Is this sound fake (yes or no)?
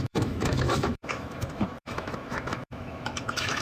yes